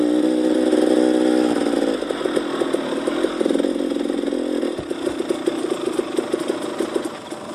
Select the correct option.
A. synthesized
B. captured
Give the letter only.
B